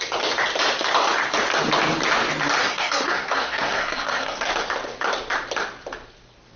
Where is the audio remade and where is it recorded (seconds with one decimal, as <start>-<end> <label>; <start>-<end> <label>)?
0.0-2.6 recorded; 2.6-4.5 remade; 4.5-6.6 recorded